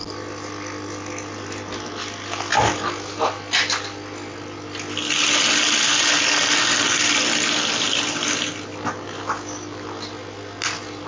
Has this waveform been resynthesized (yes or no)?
no